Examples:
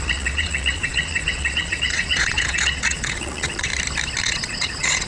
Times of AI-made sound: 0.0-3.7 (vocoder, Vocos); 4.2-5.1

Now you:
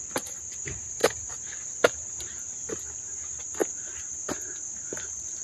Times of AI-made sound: none